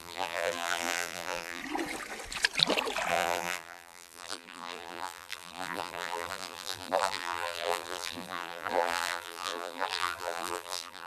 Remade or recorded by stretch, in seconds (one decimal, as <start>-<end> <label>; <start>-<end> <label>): 0.0-1.6 remade; 1.6-3.1 recorded; 3.1-11.1 remade